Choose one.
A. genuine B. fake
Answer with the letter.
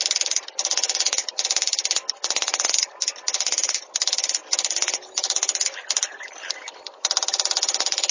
A